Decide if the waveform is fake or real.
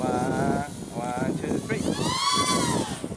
real